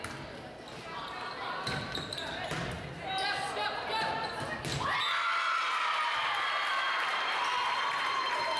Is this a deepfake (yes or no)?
no